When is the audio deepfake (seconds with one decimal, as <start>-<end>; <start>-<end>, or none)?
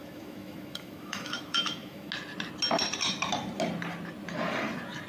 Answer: 0.0-2.1